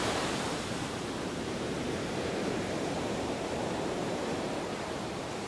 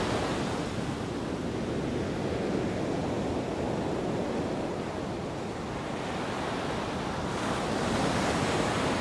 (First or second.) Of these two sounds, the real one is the second